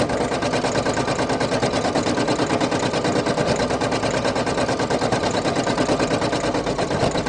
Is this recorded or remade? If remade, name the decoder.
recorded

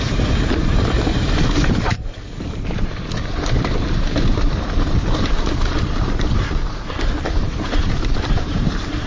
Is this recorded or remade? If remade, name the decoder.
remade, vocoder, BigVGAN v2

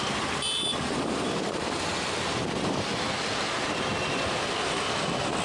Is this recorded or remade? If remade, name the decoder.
recorded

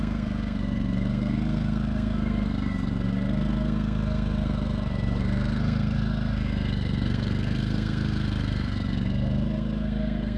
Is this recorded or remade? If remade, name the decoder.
remade, codec, SNAC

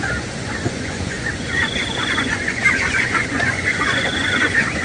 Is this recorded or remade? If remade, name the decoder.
remade, vocoder, Vocos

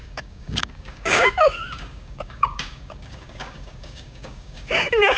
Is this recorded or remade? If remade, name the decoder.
remade, codec, DAC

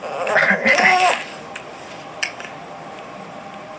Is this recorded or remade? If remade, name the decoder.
recorded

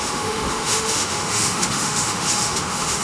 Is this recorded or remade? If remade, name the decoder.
remade, autoencoder, DAC-VAE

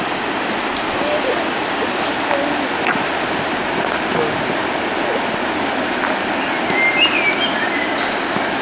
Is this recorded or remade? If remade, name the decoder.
recorded